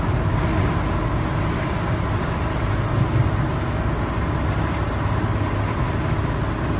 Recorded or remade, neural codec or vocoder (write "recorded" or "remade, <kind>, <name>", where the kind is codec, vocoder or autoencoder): recorded